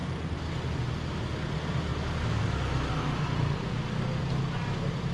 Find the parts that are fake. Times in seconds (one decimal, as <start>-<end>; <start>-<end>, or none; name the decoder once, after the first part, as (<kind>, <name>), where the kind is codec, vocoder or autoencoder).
none